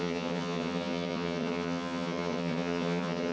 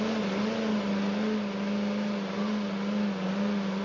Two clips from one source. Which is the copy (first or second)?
first